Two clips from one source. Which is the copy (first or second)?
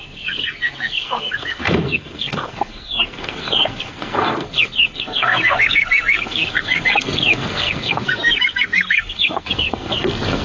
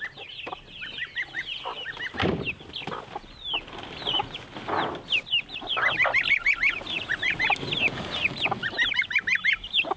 first